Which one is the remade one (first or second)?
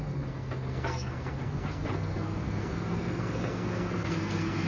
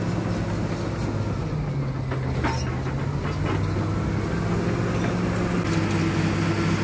first